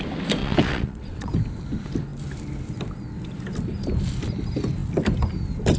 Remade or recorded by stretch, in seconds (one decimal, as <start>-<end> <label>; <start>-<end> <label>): 0.0-0.4 recorded; 0.4-1.3 remade; 1.3-5.8 recorded